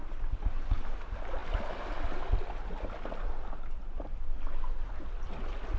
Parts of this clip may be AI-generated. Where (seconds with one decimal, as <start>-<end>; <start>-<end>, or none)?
none